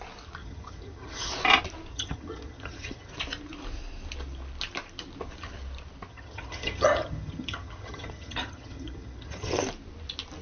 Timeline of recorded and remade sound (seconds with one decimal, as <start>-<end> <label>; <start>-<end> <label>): 0.0-0.4 recorded; 0.4-1.3 remade; 1.3-1.9 recorded; 1.9-3.1 remade; 3.1-6.1 recorded; 6.1-9.5 remade; 9.5-10.4 recorded